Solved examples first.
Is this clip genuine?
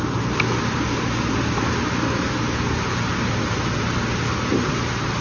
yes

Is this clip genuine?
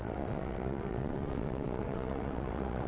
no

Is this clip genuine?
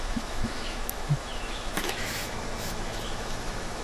no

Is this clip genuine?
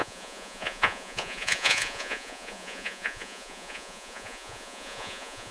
no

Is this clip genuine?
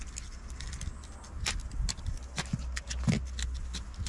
yes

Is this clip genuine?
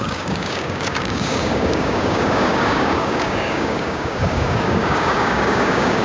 no